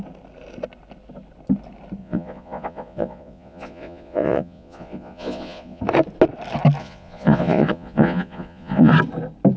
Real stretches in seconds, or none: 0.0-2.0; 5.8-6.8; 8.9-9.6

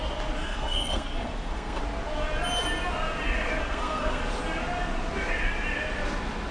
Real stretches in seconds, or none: 0.0-0.4; 1.8-3.6; 4.2-6.5

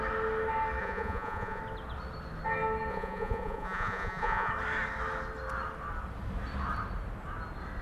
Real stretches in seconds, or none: 0.0-0.8; 1.6-2.9; 4.5-7.8

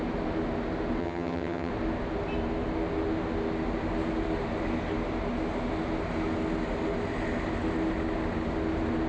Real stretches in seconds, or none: 0.0-1.0; 1.7-9.1

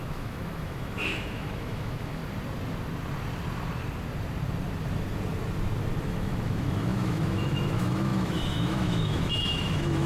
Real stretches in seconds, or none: 2.2-6.0

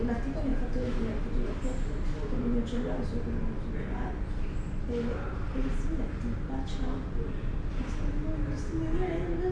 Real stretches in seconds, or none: 0.0-0.5; 1.2-9.5